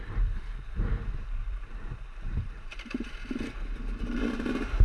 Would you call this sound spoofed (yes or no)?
yes